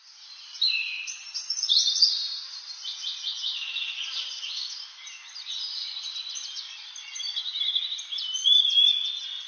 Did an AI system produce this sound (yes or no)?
yes